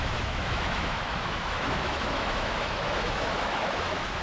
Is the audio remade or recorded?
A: remade